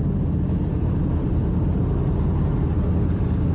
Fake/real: real